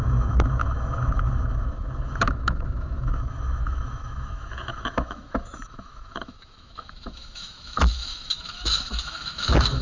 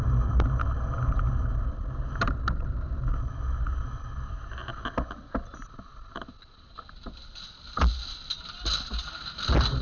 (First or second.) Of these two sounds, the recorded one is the second